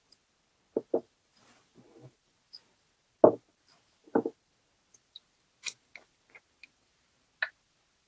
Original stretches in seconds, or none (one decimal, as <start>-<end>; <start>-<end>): 0.0-8.1